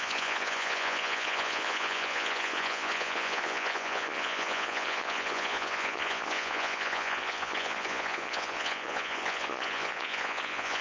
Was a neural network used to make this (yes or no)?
yes